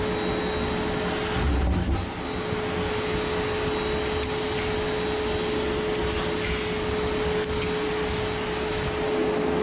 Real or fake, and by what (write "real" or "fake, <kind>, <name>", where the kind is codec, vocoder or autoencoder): real